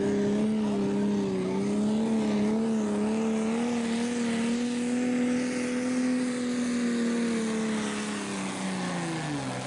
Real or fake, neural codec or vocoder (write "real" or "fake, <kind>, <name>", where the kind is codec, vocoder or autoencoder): real